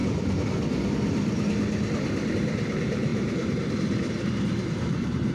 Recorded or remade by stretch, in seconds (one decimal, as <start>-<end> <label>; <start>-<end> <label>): 0.0-2.3 recorded; 2.3-5.3 remade